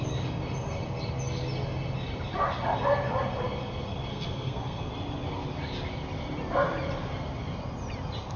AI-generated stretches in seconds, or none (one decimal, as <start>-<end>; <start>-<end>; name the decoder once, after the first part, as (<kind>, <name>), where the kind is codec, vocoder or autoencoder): 4.1-4.9 (codec, SNAC)